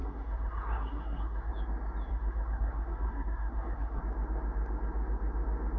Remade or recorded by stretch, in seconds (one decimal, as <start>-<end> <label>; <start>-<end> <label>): 0.0-1.5 remade; 1.5-2.1 recorded; 2.1-4.0 remade; 4.0-5.8 recorded